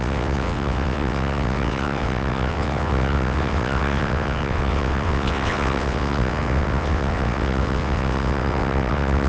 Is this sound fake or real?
fake